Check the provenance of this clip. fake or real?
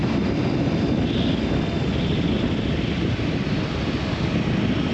real